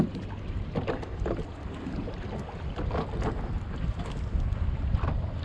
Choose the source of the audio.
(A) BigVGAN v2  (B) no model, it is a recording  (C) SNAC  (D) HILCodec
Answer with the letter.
B